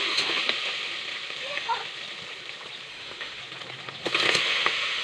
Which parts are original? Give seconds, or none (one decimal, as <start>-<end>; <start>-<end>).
0.4-1.4; 1.8-2.9; 3.4-4.3